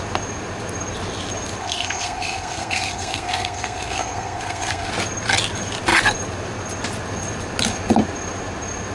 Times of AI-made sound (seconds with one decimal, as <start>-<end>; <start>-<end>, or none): 1.6-4.9